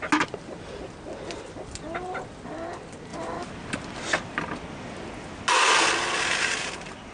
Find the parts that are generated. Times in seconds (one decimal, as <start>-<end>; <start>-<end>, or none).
none